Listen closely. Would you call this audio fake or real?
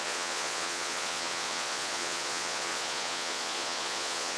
fake